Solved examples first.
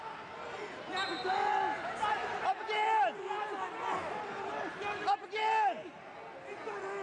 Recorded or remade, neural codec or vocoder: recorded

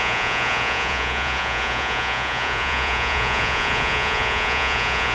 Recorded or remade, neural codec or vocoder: remade, vocoder, Vocos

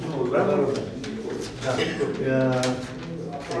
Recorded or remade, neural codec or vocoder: recorded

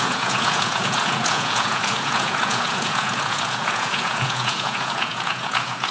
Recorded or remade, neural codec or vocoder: remade, vocoder, Vocos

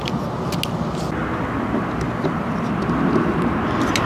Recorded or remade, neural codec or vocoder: recorded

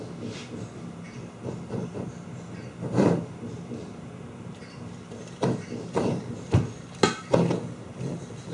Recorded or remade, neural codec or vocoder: recorded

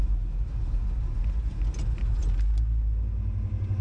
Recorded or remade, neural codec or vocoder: recorded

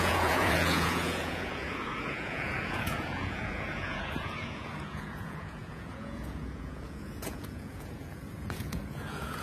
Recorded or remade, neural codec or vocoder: remade, vocoder, Vocos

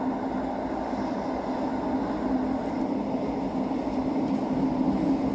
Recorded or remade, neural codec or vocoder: recorded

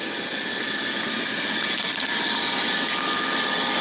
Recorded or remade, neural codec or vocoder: recorded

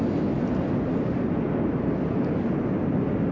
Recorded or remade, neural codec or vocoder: recorded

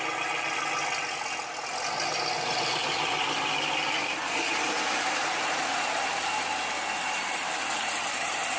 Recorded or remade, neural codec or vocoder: recorded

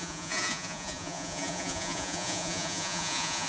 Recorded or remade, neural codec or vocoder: remade, vocoder, Vocos